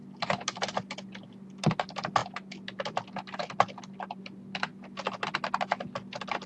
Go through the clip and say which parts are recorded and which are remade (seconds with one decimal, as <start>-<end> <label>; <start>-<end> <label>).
0.0-6.5 recorded